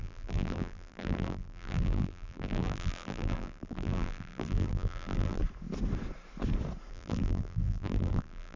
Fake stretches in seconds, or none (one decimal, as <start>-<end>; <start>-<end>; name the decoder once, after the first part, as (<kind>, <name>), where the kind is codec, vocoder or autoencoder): 0.0-5.4 (vocoder, BigVGAN v2); 6.9-8.6